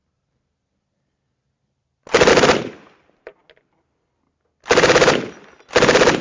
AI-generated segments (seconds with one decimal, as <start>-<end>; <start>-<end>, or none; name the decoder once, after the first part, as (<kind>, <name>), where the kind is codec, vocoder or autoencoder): none